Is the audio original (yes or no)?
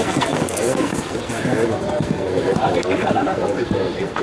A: no